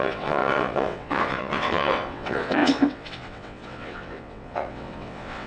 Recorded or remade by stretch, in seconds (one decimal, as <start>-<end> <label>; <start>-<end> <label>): 0.0-5.5 remade